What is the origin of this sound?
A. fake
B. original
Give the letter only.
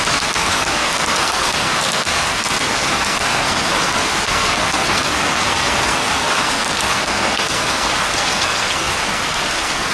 A